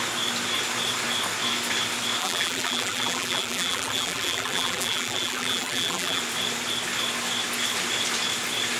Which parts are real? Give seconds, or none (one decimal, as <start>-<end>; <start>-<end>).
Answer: 0.0-2.2; 6.2-8.8